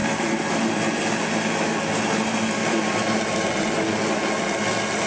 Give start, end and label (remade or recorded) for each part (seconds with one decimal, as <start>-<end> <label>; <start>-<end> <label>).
0.0-1.0 remade; 1.0-2.6 recorded; 2.6-3.9 remade; 3.9-5.1 recorded